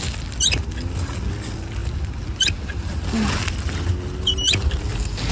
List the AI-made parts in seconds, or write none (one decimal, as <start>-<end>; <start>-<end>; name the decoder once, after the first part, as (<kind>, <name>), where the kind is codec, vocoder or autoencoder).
none